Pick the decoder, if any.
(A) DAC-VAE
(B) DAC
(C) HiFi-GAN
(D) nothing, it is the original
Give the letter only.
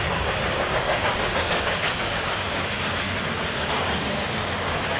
B